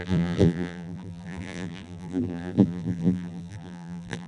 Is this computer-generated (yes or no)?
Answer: yes